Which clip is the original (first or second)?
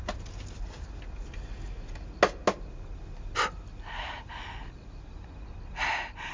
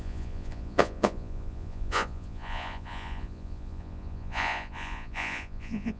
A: first